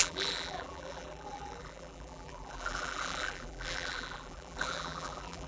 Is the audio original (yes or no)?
no